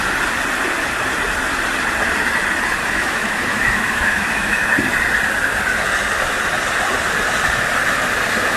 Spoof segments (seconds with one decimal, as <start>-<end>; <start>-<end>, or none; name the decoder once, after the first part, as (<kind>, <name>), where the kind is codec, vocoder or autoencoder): 2.8-4.7 (autoencoder, DAC-VAE)